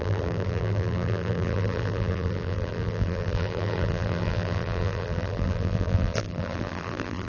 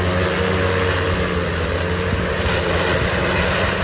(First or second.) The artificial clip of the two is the first